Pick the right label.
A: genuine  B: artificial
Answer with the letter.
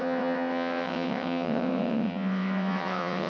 B